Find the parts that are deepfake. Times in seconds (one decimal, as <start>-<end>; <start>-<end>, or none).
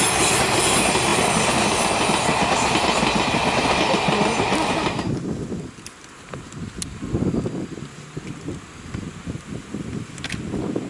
none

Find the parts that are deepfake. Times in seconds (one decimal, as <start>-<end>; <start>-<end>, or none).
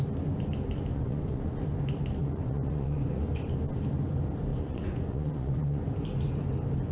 0.9-1.5; 2.2-3.3; 4.5-5.8